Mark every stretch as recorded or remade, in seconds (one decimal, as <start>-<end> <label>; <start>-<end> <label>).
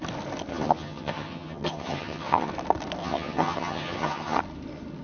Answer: 0.0-0.5 recorded; 0.5-2.5 remade; 2.5-3.0 recorded; 3.0-4.4 remade; 4.4-5.0 recorded